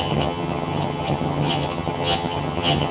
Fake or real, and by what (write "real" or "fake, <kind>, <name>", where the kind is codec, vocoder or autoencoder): fake, vocoder, HiFi-GAN